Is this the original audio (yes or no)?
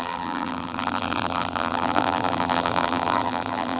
no